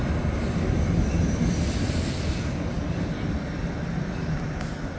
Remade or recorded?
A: recorded